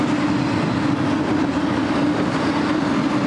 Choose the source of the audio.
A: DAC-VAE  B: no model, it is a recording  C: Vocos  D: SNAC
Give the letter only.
B